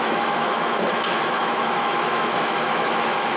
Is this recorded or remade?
remade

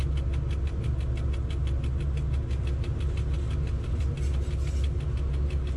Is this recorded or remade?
recorded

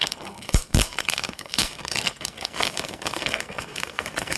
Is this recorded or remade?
remade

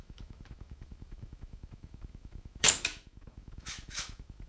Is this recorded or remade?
remade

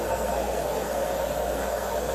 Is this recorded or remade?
remade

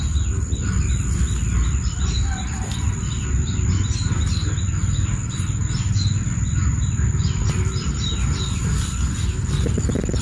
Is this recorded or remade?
recorded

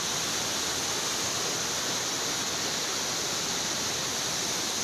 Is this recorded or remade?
recorded